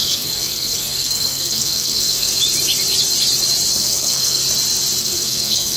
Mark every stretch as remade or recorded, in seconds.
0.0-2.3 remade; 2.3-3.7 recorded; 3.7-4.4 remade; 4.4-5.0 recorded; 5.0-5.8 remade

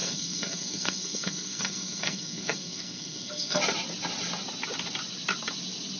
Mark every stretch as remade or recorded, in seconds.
0.0-3.6 remade; 3.6-6.0 recorded

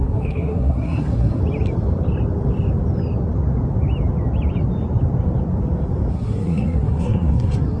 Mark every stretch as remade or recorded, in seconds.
0.0-1.4 remade; 1.4-6.1 recorded; 6.1-7.8 remade

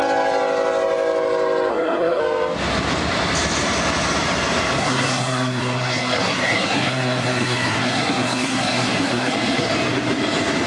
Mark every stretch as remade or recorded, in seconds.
0.0-1.7 recorded; 1.7-2.2 remade; 2.2-4.8 recorded; 4.8-9.7 remade; 9.7-10.7 recorded

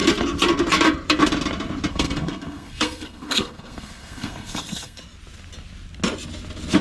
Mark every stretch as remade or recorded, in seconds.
0.0-1.9 recorded; 1.9-5.0 remade; 5.0-6.8 recorded

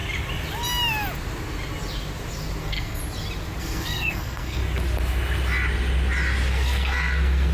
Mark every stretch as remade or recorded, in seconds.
0.0-2.6 recorded; 2.6-3.0 remade; 3.0-3.6 recorded; 3.6-4.6 remade; 4.6-6.5 recorded; 6.5-7.5 remade

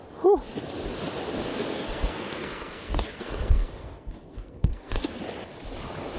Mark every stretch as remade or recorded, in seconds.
0.0-1.5 recorded; 1.5-5.2 remade; 5.2-6.2 recorded